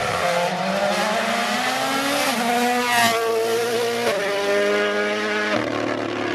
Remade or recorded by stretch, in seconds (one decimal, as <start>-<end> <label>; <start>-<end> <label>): 0.0-6.3 recorded